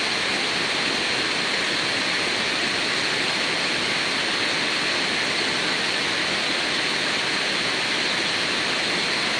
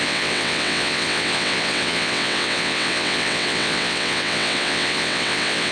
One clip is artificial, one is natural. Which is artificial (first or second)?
second